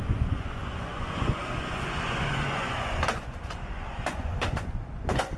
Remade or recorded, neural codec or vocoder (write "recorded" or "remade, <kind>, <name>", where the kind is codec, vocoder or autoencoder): remade, vocoder, Vocos